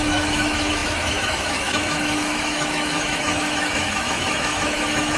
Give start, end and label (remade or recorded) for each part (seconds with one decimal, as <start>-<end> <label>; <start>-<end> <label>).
0.0-5.2 remade